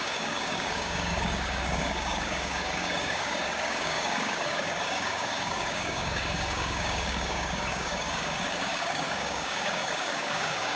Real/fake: fake